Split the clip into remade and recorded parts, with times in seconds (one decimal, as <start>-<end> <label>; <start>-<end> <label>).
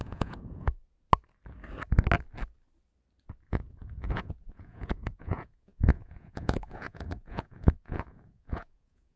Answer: 0.0-0.8 remade; 0.8-3.5 recorded; 3.5-9.2 remade